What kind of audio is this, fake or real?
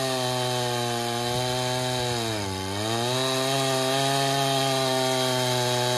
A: real